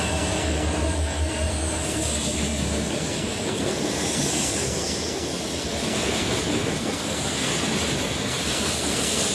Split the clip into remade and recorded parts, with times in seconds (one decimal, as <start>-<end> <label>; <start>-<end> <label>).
0.0-7.5 remade; 7.5-8.0 recorded; 8.0-9.3 remade